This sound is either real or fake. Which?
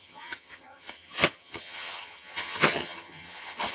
fake